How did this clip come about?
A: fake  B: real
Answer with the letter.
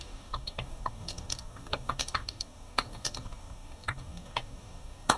A